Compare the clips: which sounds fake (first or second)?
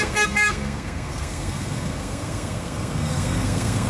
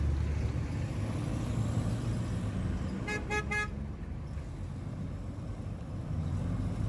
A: first